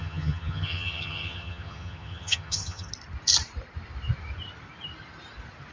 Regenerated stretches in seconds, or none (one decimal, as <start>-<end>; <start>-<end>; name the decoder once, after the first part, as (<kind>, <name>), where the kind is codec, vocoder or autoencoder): 0.0-2.9 (vocoder, HiFi-GAN)